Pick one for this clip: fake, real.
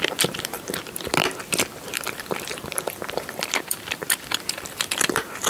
fake